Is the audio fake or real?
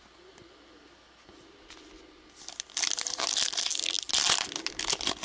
real